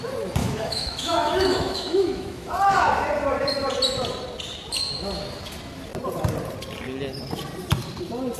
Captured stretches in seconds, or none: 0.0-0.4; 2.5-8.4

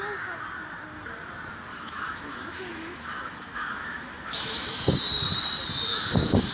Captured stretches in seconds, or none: 0.0-1.7; 4.9-5.9

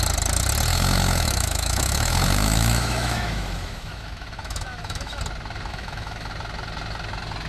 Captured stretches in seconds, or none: 0.0-0.7; 5.2-5.7; 6.3-7.5

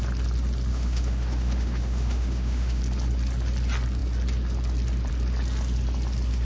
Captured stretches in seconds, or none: 0.0-0.7; 2.8-6.4

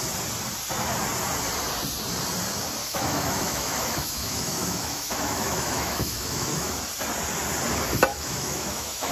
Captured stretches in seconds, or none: 0.0-2.8; 6.8-8.1